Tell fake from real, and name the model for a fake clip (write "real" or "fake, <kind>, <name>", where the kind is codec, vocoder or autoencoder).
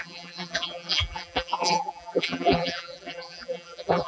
fake, vocoder, BigVGAN v2